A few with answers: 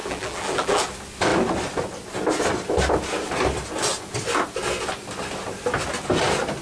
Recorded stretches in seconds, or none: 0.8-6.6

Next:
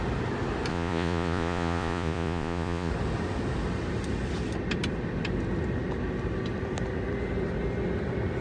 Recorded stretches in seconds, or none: 0.0-0.7; 2.9-8.4

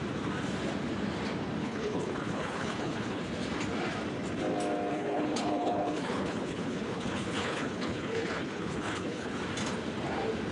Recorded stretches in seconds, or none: 0.0-1.6; 3.2-4.9; 9.4-10.5

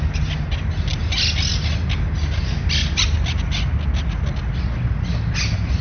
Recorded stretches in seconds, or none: 0.0-5.8